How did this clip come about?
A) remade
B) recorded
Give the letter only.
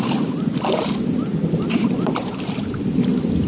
A